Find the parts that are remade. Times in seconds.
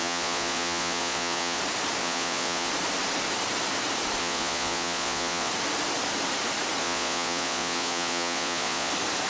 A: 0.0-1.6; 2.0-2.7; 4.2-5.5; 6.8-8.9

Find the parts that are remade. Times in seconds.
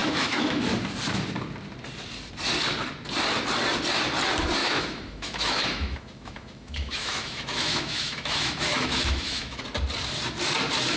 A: 0.0-0.6; 4.6-9.6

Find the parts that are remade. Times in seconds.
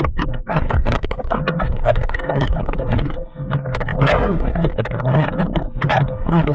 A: 0.0-6.5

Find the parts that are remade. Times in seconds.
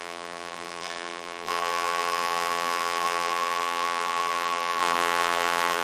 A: 0.0-5.8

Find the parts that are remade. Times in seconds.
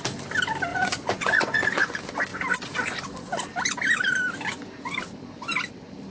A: 0.7-1.9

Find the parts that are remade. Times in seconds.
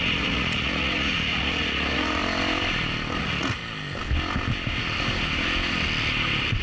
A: 0.0-2.2; 3.2-3.6